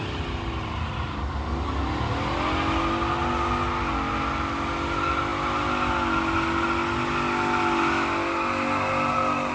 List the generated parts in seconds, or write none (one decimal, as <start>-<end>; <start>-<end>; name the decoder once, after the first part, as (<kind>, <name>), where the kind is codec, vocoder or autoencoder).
none